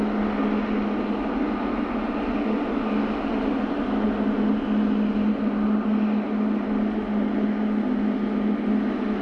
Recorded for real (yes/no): yes